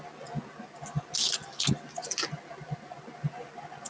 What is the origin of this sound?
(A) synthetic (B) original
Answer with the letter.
B